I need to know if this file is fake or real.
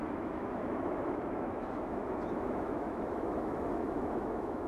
fake